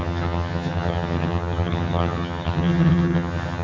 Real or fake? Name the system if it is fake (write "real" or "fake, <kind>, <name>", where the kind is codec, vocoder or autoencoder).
fake, vocoder, HiFi-GAN